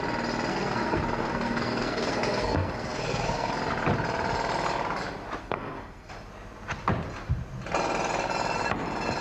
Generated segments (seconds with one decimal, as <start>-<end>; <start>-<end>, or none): 0.5-3.5; 5.4-6.1